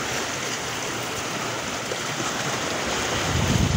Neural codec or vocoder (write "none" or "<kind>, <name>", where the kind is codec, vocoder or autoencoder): none